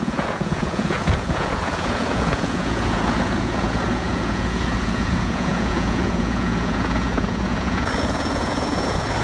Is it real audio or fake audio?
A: fake